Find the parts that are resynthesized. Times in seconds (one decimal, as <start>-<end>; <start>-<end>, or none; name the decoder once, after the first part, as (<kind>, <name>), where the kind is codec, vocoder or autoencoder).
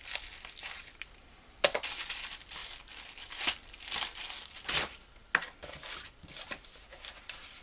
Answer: none